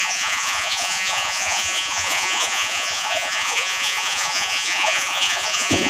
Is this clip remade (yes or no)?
yes